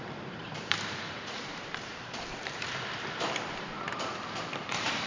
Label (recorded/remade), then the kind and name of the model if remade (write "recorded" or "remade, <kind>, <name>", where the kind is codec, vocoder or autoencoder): remade, vocoder, BigVGAN v2